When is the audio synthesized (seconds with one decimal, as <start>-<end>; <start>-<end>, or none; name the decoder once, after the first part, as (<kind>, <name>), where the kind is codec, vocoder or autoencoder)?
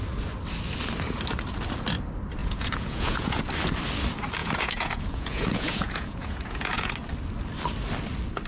2.4-3.4 (vocoder, Vocos); 4.4-6.9